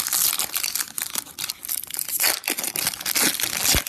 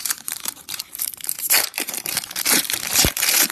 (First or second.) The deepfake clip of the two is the second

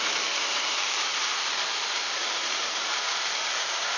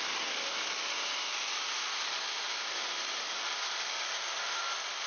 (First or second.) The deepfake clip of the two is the first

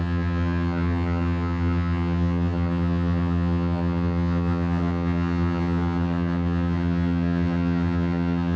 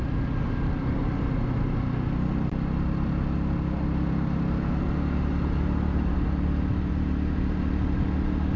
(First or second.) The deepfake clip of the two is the first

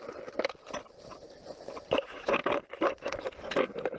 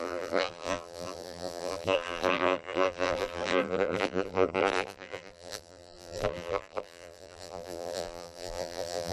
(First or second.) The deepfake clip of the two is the second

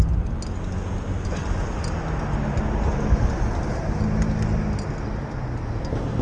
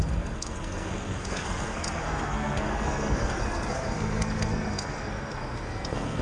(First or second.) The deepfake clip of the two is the second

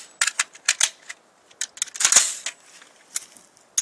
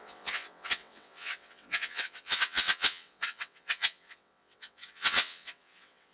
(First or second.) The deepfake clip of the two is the second